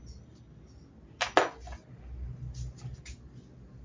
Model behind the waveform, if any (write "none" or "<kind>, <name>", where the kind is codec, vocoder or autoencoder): none